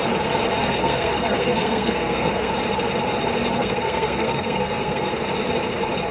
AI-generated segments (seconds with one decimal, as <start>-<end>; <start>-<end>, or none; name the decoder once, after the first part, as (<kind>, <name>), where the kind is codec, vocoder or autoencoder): 0.6-2.5 (codec, SNAC); 3.6-5.1